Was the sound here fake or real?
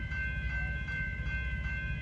real